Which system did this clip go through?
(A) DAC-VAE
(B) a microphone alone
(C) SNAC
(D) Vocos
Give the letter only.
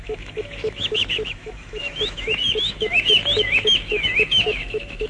A